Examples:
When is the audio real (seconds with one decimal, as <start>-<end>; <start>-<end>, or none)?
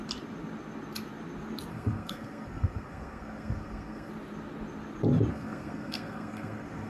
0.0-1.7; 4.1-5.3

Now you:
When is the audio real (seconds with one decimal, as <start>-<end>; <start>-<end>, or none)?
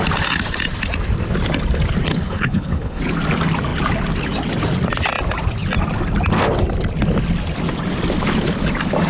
0.0-2.1; 3.0-9.1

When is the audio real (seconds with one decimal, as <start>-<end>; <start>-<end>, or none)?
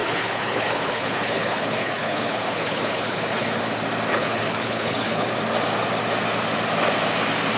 3.6-4.1; 5.3-7.6